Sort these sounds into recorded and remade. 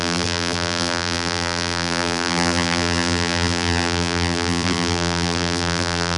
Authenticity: remade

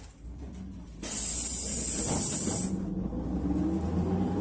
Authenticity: recorded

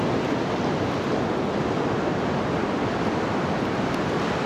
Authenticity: recorded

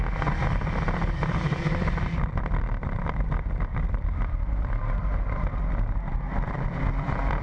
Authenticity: remade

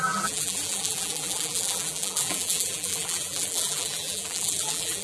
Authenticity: remade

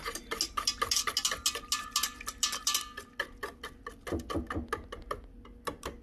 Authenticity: recorded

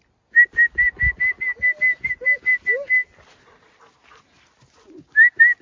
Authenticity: recorded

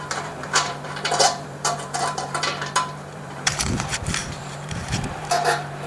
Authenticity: remade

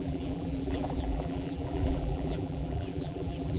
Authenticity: remade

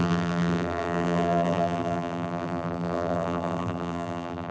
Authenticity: remade